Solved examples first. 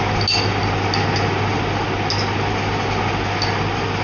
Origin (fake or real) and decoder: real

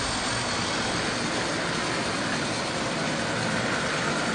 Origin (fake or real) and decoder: real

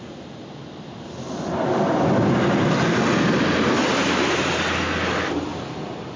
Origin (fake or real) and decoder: real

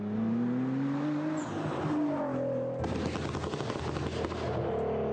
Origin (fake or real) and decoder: real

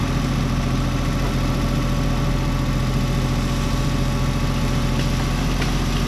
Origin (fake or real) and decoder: real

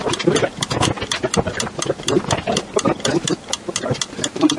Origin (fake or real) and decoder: real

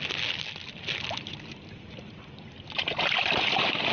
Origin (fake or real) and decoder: real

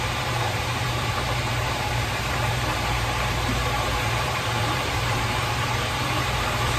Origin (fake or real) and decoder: fake, vocoder, BigVGAN v2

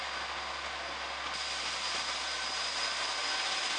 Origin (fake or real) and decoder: real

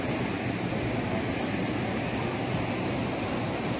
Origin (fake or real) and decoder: real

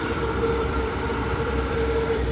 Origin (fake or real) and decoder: fake, vocoder, BigVGAN v2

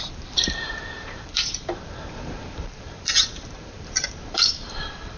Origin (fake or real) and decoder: fake, vocoder, BigVGAN v2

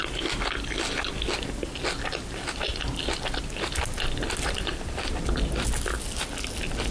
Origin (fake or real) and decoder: real